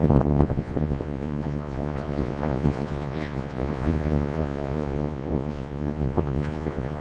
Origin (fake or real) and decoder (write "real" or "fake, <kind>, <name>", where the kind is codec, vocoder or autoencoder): fake, vocoder, Vocos